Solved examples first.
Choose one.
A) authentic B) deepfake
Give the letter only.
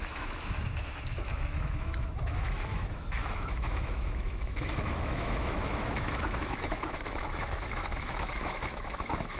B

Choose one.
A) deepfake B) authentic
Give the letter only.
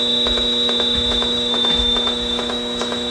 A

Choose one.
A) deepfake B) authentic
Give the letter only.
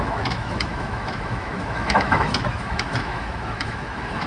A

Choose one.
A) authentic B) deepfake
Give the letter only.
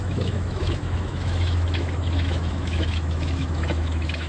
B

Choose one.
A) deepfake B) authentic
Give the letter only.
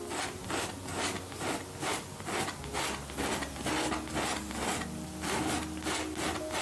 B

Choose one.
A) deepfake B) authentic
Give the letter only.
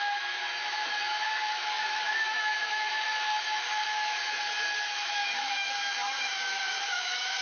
A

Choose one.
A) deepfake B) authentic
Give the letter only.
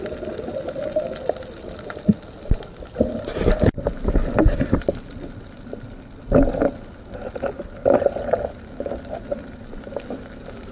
B